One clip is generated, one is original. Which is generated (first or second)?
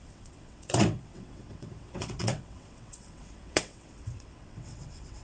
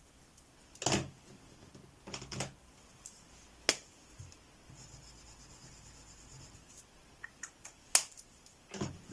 first